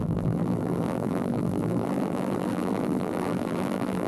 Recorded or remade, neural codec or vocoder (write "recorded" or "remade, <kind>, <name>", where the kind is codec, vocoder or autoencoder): remade, vocoder, BigVGAN v2